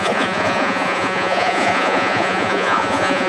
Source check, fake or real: fake